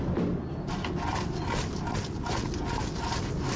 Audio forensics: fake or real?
real